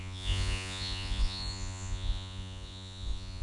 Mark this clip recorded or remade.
remade